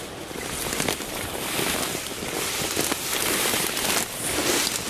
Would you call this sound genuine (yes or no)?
yes